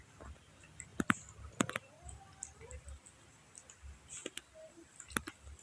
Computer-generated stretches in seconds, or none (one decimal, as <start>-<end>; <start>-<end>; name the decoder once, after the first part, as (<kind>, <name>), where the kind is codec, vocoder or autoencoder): none